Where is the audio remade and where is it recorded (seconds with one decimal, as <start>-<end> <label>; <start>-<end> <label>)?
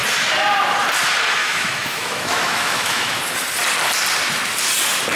0.0-1.4 recorded; 1.4-3.2 remade; 3.2-5.2 recorded